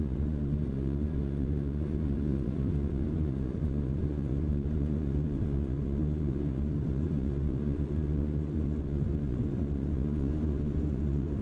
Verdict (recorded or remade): remade